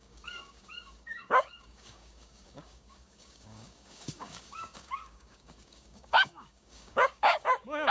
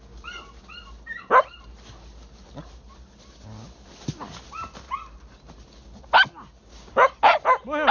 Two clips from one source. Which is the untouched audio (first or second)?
second